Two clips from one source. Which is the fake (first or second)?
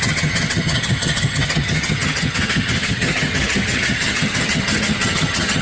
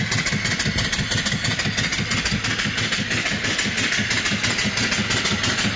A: first